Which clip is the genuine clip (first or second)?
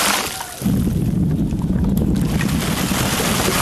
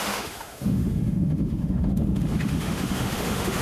first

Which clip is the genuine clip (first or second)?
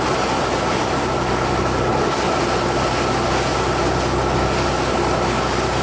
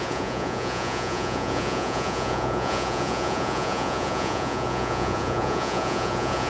first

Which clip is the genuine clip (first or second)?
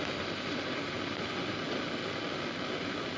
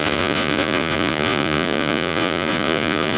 first